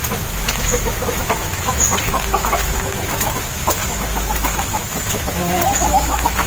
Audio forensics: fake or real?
fake